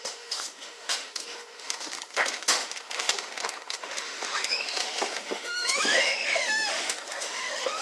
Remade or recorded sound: remade